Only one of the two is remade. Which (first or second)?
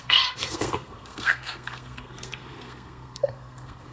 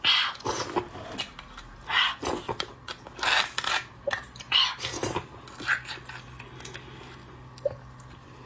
first